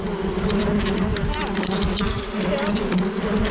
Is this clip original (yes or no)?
yes